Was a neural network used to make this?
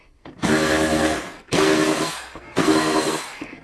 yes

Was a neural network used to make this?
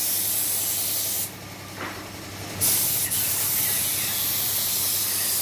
no